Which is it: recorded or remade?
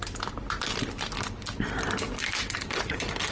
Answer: recorded